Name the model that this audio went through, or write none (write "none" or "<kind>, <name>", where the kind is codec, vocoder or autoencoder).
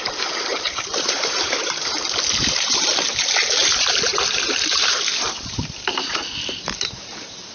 vocoder, BigVGAN v2